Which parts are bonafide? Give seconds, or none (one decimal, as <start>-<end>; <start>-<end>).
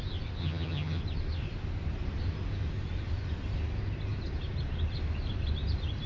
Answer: 0.0-0.4; 1.0-6.1